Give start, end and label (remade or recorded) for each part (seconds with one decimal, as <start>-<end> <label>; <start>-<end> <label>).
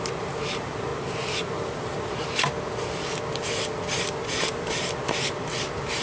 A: 0.0-0.9 remade; 0.9-4.5 recorded; 4.5-6.0 remade